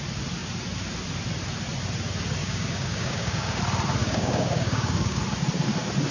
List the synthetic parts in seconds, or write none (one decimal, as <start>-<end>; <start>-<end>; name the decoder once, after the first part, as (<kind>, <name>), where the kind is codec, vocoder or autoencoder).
2.4-3.6 (codec, DAC); 4.0-5.2